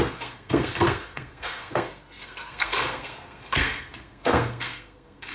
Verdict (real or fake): fake